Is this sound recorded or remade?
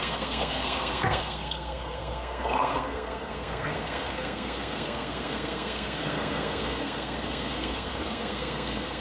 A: remade